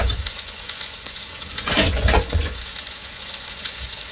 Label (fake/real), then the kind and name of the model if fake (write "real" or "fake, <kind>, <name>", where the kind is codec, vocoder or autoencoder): fake, vocoder, Vocos